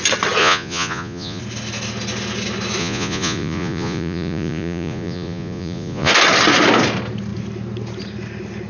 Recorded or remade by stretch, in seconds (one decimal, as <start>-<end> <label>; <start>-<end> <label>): 0.0-0.4 recorded; 0.4-1.4 remade; 1.4-2.8 recorded; 2.8-6.1 remade; 6.1-8.7 recorded